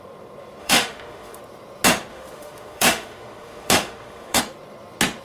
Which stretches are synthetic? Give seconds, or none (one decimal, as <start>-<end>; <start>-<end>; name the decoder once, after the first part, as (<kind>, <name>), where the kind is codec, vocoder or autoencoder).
0.6-1.4 (autoencoder, DAC-VAE); 2.1-4.4